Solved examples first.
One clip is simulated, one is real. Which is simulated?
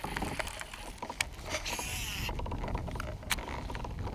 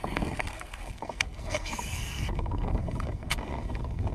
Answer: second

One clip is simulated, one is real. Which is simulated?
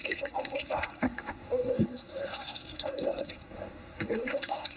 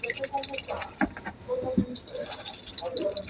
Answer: first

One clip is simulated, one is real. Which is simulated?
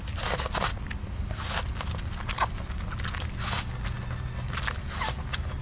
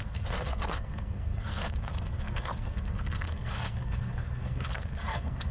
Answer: second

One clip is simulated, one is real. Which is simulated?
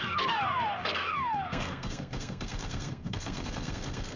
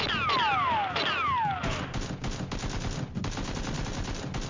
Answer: first